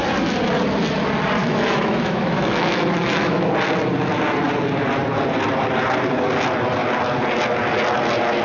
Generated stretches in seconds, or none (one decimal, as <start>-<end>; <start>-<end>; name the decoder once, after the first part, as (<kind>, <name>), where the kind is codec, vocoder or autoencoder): 1.4-3.5 (autoencoder, DAC-VAE)